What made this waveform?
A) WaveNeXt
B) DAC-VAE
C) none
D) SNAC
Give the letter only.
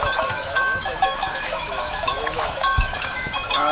B